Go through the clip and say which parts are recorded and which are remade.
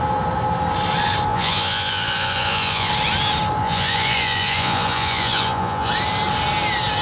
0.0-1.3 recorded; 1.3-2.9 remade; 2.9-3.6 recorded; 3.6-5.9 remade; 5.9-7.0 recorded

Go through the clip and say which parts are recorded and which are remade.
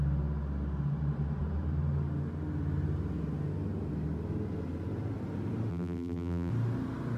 0.0-5.7 recorded; 5.7-6.5 remade; 6.5-7.2 recorded